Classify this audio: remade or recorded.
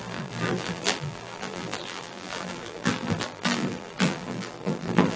remade